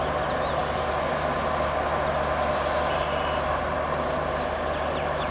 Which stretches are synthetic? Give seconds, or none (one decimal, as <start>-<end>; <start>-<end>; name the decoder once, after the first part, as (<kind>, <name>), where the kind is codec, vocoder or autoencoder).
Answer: none